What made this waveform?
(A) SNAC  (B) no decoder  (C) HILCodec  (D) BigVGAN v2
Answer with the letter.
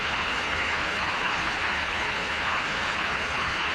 C